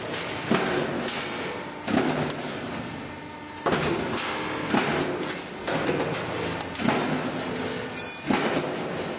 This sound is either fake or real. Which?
real